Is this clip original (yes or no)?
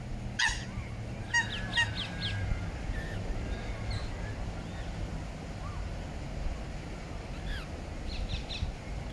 yes